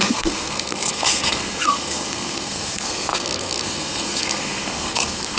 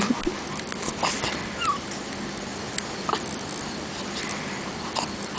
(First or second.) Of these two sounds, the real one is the second